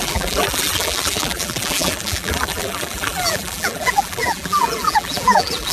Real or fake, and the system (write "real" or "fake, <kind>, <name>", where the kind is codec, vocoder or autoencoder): fake, vocoder, BigVGAN v2